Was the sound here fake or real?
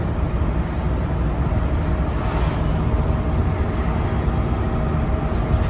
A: real